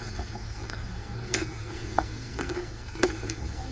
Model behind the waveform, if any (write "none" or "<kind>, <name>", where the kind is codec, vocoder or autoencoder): codec, SNAC